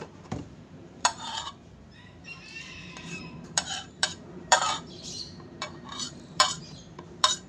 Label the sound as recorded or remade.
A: remade